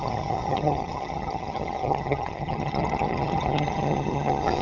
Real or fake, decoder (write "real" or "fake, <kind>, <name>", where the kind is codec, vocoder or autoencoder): fake, vocoder, HiFi-GAN